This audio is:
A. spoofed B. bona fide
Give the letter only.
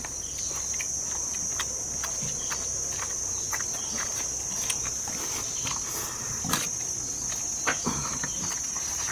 B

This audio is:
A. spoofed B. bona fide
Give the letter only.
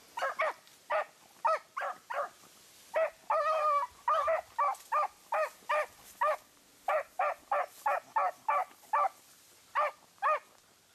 B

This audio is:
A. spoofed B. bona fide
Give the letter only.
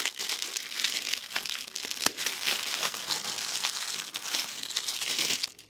A